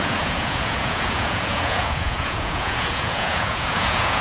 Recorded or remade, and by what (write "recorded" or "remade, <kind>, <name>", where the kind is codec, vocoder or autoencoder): remade, vocoder, Vocos